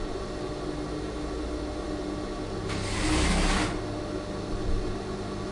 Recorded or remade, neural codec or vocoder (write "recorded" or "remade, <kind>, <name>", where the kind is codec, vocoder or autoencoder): recorded